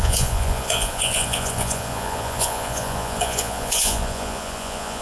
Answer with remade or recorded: remade